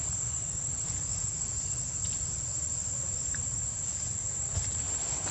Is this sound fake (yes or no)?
no